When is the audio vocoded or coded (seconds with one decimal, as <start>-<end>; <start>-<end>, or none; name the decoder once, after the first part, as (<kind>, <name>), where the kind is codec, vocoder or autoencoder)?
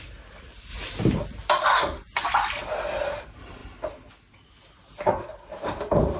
none